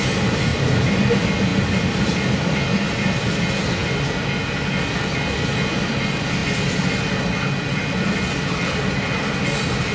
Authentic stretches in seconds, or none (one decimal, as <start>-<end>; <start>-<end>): 0.0-9.9